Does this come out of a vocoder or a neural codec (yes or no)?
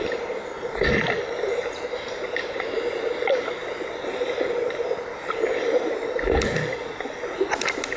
no